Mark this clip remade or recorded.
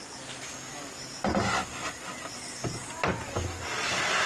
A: recorded